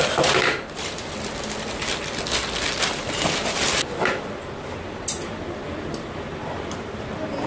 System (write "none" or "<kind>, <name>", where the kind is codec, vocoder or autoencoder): none